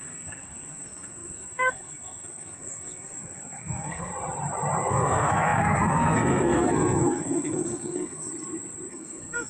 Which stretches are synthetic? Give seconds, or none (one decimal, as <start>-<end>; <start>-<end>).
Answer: 0.0-4.1; 4.9-8.3; 8.9-9.5